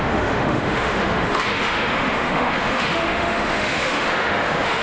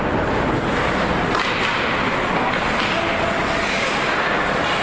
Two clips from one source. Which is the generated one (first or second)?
first